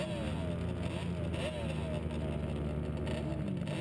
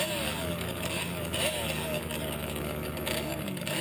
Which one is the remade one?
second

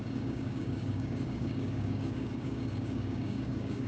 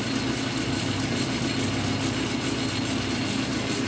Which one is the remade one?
first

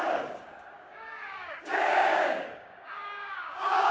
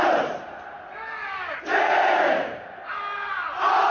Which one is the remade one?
first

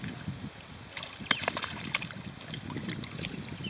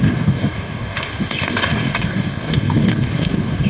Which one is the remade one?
second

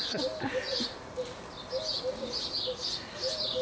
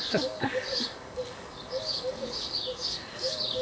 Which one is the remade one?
second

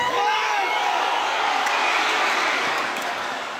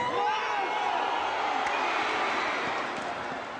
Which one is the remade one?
first